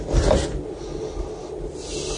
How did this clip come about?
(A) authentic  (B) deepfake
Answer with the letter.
A